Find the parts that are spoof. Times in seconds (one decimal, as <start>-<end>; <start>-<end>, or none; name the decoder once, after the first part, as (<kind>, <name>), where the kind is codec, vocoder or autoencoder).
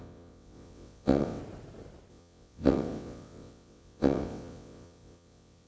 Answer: 0.0-1.4 (vocoder, WaveNeXt); 2.1-5.7